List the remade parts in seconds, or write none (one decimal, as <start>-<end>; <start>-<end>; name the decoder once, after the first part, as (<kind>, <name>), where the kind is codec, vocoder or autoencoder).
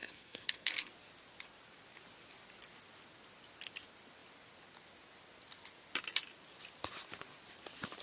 0.0-0.9 (codec, SNAC)